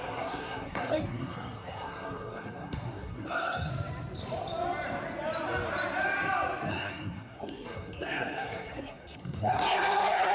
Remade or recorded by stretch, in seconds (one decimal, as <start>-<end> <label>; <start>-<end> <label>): 0.0-3.7 remade; 3.7-6.7 recorded; 6.7-10.3 remade